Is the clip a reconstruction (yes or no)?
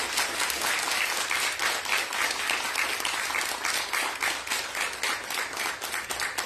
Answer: no